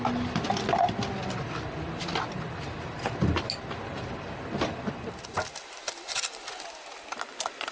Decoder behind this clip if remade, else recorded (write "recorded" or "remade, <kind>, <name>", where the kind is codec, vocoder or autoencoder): recorded